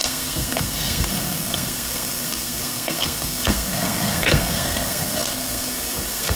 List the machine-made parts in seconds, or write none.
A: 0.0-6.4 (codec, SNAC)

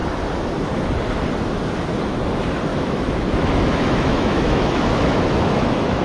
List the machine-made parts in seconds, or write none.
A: 2.7-6.0 (autoencoder, DAC-VAE)

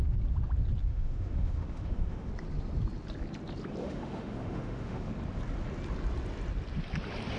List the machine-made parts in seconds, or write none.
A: 0.9-2.3 (autoencoder, DAC-VAE); 3.8-5.1